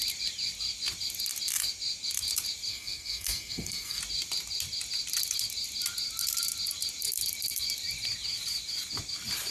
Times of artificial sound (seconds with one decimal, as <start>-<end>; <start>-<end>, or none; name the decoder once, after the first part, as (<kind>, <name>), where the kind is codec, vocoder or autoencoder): 2.7-4.0 (codec, SNAC)